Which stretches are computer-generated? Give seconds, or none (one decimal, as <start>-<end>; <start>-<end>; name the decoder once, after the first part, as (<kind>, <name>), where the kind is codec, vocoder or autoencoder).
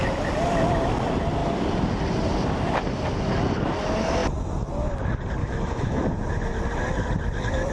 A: 5.4-6.0 (autoencoder, DAC-VAE)